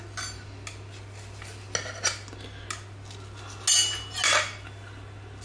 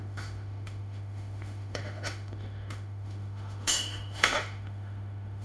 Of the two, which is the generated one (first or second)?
second